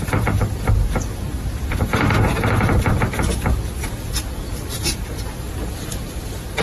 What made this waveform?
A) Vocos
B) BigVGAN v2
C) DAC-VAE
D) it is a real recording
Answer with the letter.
B